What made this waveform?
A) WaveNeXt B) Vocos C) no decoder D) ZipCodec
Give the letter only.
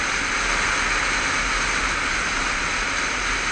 C